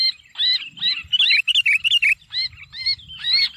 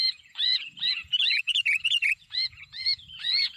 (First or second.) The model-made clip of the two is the second